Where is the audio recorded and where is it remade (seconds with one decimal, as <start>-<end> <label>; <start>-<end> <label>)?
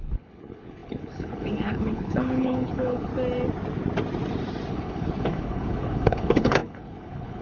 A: 0.0-3.1 remade; 3.1-4.7 recorded; 4.7-7.4 remade